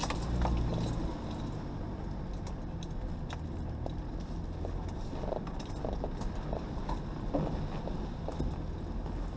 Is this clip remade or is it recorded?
recorded